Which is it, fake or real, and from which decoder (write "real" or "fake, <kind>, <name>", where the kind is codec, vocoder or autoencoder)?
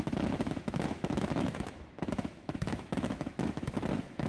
fake, autoencoder, DAC-VAE